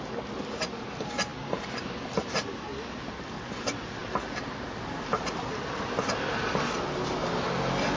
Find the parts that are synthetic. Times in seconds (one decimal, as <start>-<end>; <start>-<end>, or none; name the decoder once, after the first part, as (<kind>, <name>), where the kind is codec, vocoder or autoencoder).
none